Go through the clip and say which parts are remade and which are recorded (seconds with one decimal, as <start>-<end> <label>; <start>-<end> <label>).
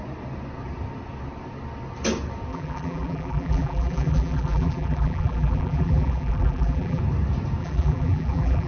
0.0-2.5 recorded; 2.5-7.0 remade; 7.0-7.6 recorded; 7.6-8.7 remade